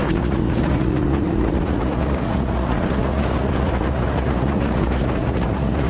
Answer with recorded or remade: remade